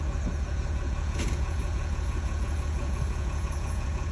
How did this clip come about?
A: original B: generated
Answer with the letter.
B